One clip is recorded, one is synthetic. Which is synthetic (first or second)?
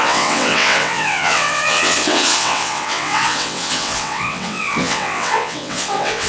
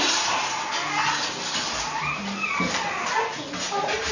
first